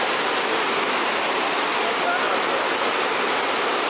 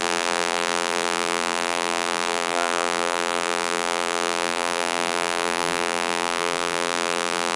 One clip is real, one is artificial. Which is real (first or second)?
first